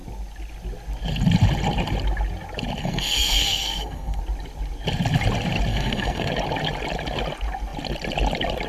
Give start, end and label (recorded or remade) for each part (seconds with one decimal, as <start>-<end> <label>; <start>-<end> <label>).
0.0-2.8 recorded; 2.8-4.2 remade; 4.2-5.7 recorded; 5.7-6.3 remade; 6.3-8.7 recorded

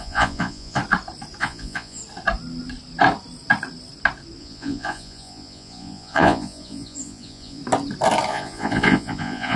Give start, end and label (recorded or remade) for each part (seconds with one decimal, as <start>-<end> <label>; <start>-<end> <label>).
0.0-0.8 remade; 0.8-1.4 recorded; 1.4-2.0 remade; 2.0-4.4 recorded; 4.4-7.6 remade; 7.6-8.3 recorded; 8.3-9.6 remade

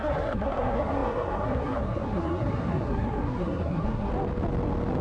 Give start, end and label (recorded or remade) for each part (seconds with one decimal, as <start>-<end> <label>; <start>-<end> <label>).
0.0-4.1 remade; 4.1-5.0 recorded

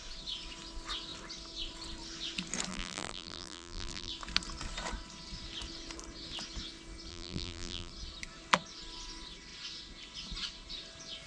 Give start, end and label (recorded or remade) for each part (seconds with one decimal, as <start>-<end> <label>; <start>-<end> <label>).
0.0-2.7 recorded; 2.7-4.1 remade; 4.1-7.1 recorded; 7.1-7.9 remade; 7.9-11.3 recorded